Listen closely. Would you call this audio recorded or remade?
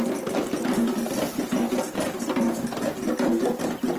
recorded